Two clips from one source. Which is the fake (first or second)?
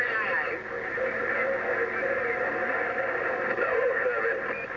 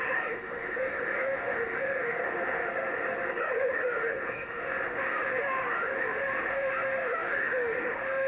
second